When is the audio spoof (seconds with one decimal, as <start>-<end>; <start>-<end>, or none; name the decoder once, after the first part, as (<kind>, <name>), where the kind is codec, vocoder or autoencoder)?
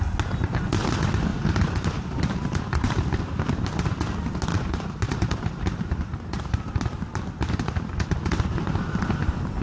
1.3-3.2 (vocoder, BigVGAN v2); 4.5-9.6